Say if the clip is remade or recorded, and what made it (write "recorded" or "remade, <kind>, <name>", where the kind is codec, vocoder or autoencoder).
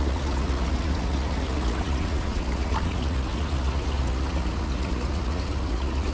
remade, vocoder, Vocos